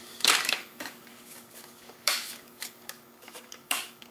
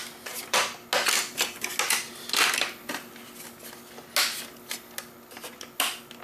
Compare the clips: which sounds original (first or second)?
second